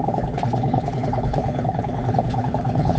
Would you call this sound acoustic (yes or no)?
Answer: no